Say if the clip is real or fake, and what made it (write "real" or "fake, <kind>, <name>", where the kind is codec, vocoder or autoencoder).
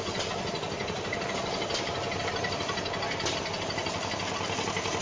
real